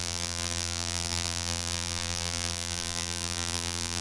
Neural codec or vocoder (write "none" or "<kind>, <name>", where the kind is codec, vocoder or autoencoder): vocoder, BigVGAN v2